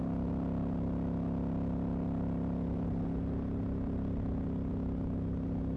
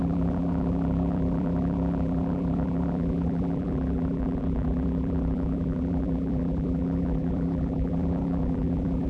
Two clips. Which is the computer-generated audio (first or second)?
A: second